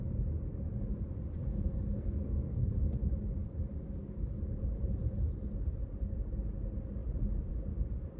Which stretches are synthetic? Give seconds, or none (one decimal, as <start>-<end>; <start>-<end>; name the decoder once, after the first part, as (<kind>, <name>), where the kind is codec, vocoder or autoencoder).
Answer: 1.4-2.7 (codec, SNAC)